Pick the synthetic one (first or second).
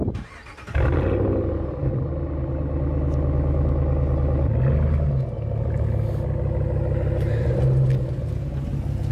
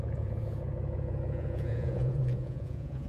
second